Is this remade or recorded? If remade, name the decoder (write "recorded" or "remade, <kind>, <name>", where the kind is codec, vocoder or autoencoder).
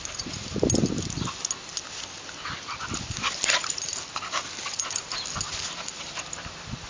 recorded